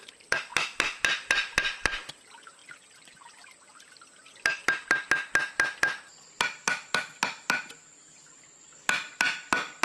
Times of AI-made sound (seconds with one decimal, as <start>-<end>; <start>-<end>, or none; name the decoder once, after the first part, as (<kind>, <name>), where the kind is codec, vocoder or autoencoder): none